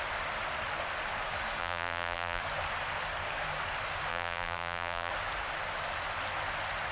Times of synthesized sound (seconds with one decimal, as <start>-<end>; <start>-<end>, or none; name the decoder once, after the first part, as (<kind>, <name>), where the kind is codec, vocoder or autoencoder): 1.6-2.4 (vocoder, BigVGAN v2); 4.1-5.1